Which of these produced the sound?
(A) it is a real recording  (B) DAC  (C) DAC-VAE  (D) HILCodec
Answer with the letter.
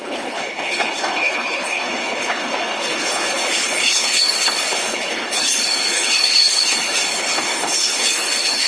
D